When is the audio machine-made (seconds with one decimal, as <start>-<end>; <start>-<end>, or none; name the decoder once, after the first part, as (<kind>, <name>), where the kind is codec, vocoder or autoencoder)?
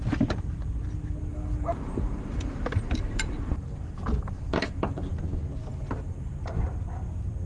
1.3-5.1 (vocoder, BigVGAN v2); 5.7-6.3